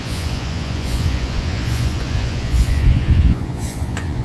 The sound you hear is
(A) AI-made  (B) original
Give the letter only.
A